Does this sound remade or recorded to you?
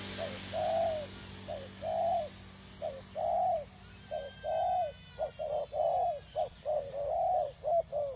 recorded